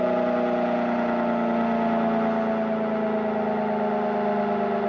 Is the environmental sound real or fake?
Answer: real